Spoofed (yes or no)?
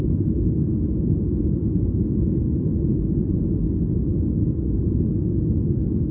no